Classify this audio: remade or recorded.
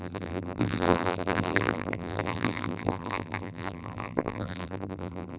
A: remade